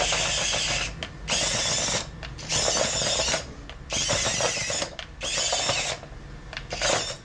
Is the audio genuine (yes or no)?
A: yes